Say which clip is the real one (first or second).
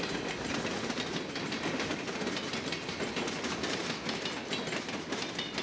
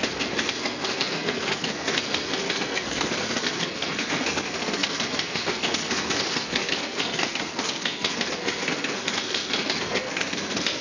first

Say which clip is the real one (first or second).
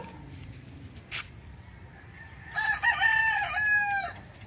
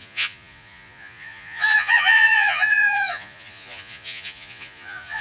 first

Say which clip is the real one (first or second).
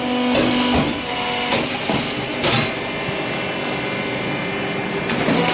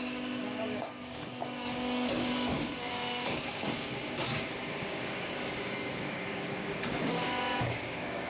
first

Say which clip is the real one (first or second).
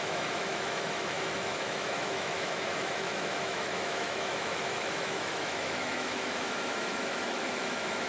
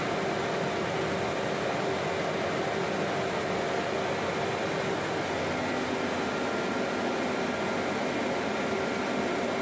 second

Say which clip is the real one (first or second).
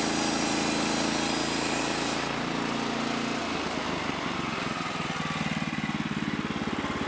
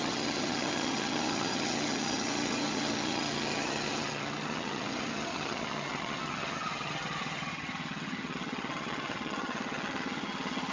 first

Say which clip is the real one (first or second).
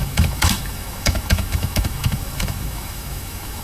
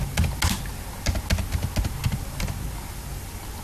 second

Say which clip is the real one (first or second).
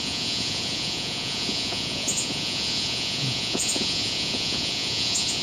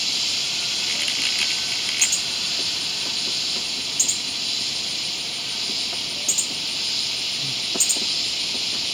second